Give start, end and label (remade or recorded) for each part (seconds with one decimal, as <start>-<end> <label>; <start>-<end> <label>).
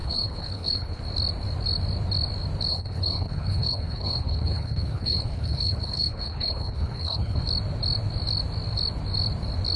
0.0-1.0 remade; 1.0-2.7 recorded; 2.7-7.4 remade; 7.4-9.8 recorded